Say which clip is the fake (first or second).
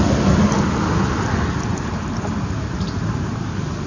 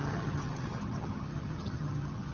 second